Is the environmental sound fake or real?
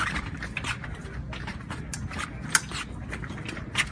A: real